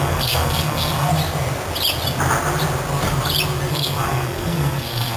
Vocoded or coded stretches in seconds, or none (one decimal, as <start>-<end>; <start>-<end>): 0.0-1.1; 3.7-5.2

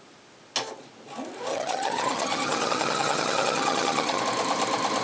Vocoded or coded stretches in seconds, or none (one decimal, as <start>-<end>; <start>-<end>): 1.5-4.2